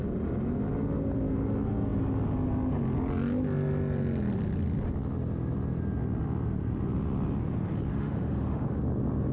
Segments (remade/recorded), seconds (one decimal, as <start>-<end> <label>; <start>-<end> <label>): 0.0-7.9 recorded; 7.9-8.8 remade; 8.8-9.3 recorded

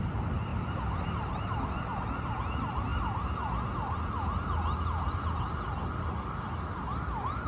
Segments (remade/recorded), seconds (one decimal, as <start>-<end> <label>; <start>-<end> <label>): 0.0-7.5 recorded

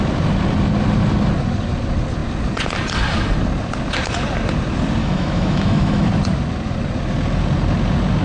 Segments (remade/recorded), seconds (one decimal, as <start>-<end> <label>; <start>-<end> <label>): 0.0-5.0 recorded; 5.0-6.1 remade; 6.1-8.2 recorded

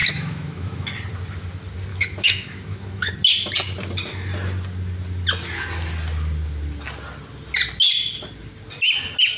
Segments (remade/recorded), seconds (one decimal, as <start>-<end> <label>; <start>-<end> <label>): 0.0-0.9 remade; 0.9-1.9 recorded; 1.9-3.1 remade; 3.1-9.4 recorded

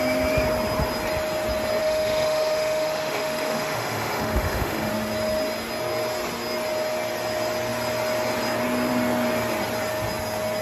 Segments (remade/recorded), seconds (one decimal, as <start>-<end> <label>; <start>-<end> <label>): 0.0-1.8 recorded; 1.8-4.9 remade; 4.9-10.6 recorded

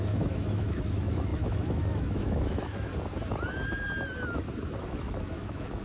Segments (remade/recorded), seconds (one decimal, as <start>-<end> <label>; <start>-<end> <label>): 0.0-2.9 remade; 2.9-4.8 recorded; 4.8-5.8 remade